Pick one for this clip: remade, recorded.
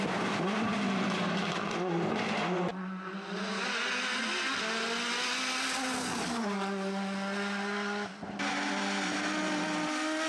recorded